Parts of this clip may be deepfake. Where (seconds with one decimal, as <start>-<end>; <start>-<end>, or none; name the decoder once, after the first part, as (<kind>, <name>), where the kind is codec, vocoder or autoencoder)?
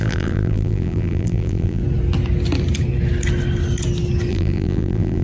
0.0-1.8 (vocoder, BigVGAN v2); 4.3-5.2